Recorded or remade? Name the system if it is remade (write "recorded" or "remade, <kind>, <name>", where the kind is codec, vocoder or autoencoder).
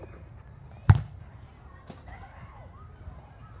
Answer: recorded